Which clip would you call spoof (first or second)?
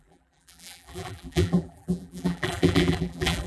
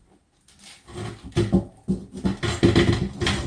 first